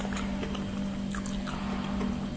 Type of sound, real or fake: real